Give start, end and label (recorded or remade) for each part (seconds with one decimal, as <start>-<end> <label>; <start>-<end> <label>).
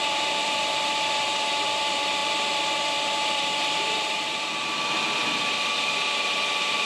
0.0-6.9 remade